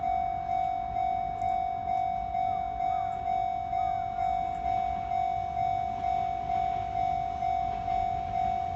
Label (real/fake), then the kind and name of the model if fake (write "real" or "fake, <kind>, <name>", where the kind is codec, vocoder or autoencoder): real